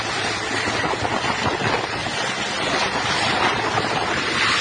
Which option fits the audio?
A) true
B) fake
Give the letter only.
A